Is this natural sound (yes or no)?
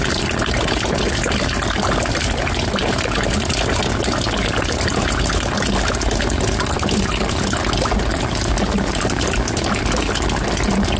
yes